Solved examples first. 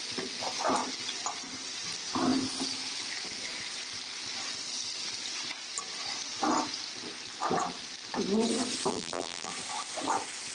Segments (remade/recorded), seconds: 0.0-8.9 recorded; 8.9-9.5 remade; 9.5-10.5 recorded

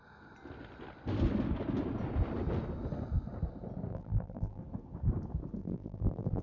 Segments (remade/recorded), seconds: 0.0-3.9 recorded; 3.9-4.6 remade; 4.6-5.6 recorded; 5.6-6.4 remade

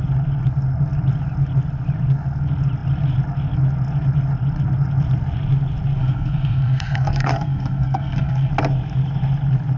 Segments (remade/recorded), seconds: 0.0-6.0 recorded; 6.0-8.5 remade; 8.5-9.8 recorded

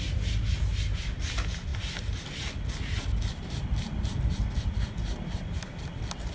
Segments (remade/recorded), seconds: 0.0-6.3 recorded